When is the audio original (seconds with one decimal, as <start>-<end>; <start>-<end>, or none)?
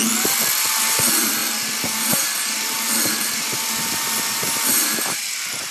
0.0-5.7